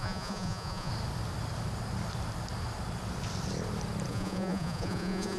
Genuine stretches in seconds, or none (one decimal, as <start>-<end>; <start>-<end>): 0.9-4.1